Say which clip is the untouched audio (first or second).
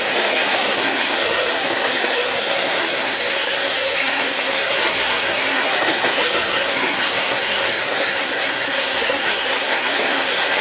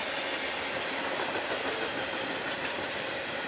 second